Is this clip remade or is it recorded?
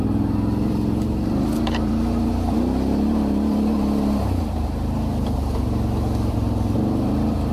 remade